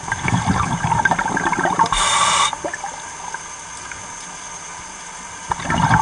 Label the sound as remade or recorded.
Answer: recorded